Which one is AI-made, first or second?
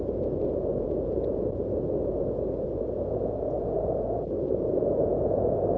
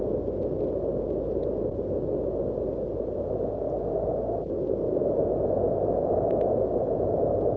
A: first